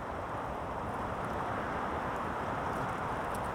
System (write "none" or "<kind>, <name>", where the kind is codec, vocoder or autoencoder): vocoder, BigVGAN v2